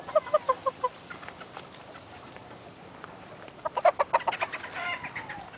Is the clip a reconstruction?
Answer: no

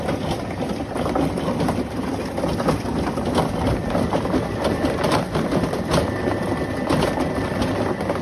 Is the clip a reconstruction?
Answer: no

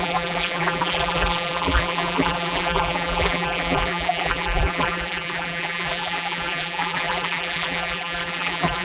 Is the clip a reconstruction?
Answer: yes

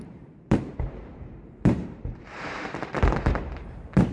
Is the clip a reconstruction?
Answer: yes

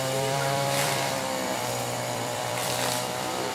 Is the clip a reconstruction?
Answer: yes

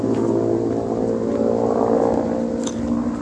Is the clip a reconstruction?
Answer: no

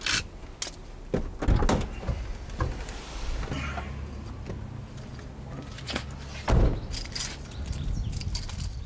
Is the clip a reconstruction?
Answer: no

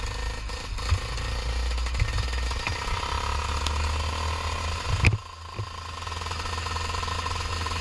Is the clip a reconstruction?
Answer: no